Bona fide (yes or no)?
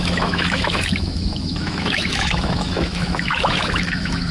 no